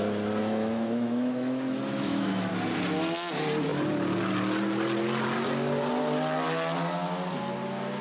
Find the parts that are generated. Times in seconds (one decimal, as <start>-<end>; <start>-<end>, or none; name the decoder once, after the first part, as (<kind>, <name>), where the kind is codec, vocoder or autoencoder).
0.4-2.5 (autoencoder, DAC-VAE)